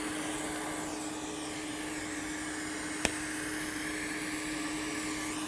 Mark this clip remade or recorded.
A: recorded